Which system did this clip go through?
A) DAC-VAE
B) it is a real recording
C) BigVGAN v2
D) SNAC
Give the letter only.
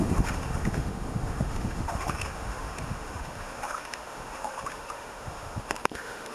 A